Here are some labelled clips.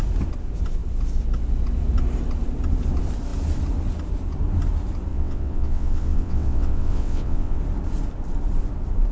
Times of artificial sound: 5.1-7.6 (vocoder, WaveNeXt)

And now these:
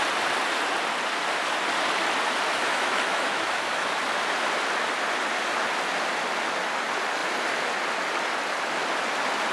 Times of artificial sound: 2.6-4.0 (autoencoder, DAC-VAE)